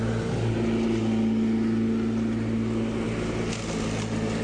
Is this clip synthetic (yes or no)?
no